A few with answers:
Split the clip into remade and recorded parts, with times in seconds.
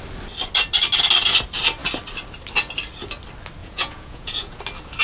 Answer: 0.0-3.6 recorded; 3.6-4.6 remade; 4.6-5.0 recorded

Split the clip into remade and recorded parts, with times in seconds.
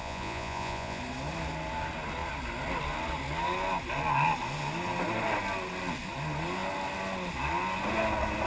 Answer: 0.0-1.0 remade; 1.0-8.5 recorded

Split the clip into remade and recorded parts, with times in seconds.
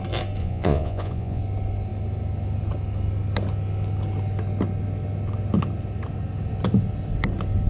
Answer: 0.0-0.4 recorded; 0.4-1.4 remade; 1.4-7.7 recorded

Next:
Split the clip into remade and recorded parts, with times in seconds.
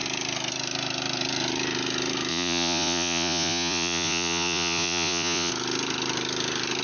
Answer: 0.0-2.3 recorded; 2.3-5.5 remade; 5.5-6.8 recorded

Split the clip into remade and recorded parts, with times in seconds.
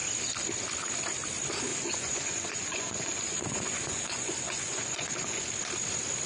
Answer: 0.0-1.7 recorded; 1.7-5.5 remade; 5.5-6.3 recorded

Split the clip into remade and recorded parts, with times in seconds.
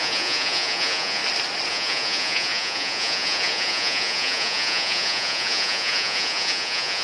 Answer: 0.0-1.2 remade; 1.2-1.7 recorded; 1.7-7.0 remade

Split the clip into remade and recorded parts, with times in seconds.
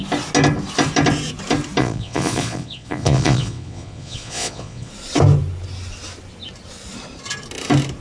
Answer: 0.0-1.8 recorded; 1.8-4.9 remade; 4.9-8.0 recorded